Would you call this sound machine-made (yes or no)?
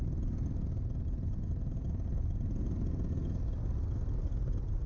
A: no